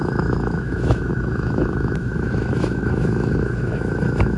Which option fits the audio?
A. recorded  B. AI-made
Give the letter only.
B